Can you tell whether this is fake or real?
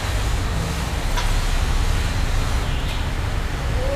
real